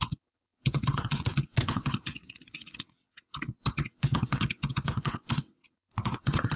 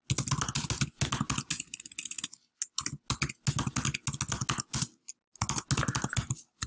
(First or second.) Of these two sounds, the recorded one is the second